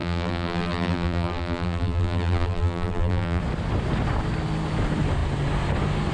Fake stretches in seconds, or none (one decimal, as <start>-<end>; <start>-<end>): 0.0-3.4